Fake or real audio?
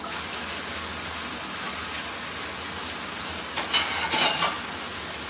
real